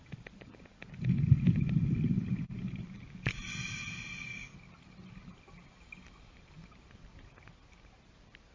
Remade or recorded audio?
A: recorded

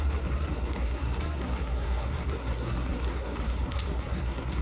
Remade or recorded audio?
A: remade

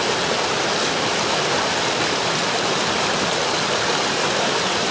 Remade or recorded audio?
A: recorded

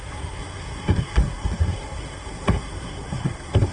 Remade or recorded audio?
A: remade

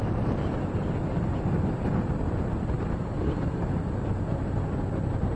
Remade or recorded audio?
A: recorded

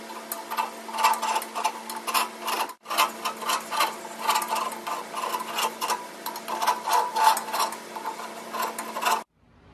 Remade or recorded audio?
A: recorded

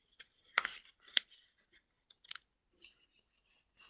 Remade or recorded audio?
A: recorded